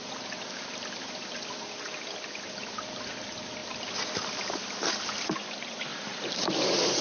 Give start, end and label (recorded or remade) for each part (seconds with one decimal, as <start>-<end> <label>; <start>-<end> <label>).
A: 0.0-5.9 recorded; 5.9-7.0 remade